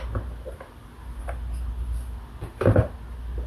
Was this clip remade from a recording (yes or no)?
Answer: yes